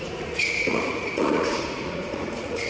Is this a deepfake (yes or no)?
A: yes